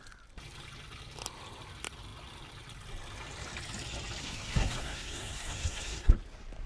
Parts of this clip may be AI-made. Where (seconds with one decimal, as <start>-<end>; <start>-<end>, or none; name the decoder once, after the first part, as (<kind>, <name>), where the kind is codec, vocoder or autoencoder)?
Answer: 4.2-6.1 (codec, SNAC)